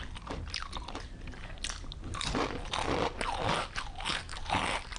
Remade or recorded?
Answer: recorded